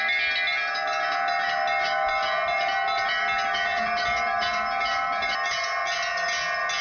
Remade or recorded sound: recorded